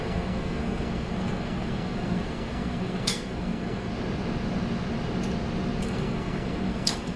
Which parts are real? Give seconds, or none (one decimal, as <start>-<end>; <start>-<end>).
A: 3.9-5.8